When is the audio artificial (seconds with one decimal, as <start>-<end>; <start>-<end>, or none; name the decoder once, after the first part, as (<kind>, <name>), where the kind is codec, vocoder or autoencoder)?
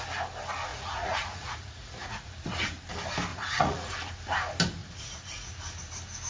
0.7-2.8 (vocoder, Vocos); 3.3-3.9; 4.8-5.6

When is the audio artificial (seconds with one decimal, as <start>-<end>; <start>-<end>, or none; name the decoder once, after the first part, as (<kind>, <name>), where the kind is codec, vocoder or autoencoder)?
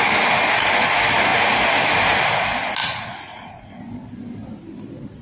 2.8-3.8 (vocoder, Vocos)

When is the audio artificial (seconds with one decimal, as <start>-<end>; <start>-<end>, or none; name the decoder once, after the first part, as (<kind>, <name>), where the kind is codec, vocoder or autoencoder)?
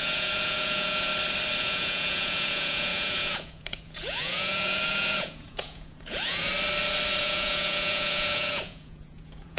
0.0-1.1 (vocoder, Vocos); 1.6-6.5; 7.2-9.6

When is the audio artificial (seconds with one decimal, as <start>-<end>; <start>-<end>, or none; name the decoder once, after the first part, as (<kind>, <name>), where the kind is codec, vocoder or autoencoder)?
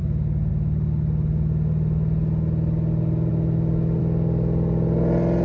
none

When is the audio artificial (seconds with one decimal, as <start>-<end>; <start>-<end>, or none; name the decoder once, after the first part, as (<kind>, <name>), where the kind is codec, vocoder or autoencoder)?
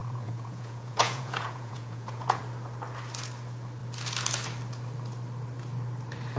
0.0-2.4 (vocoder, Vocos)